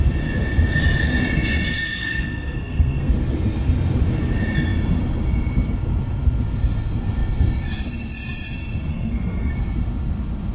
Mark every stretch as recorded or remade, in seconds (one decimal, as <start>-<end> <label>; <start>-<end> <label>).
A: 0.0-2.0 recorded; 2.0-3.1 remade; 3.1-8.9 recorded; 8.9-9.5 remade; 9.5-10.5 recorded